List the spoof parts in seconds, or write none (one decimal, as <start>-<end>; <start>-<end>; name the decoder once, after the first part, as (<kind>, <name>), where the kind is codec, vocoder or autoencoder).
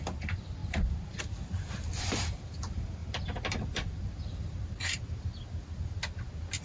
none